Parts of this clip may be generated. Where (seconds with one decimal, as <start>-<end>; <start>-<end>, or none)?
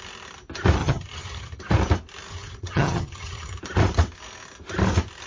0.8-1.6; 2.3-3.6